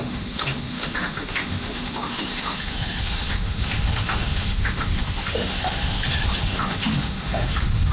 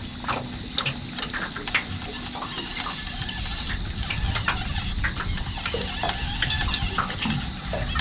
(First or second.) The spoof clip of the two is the first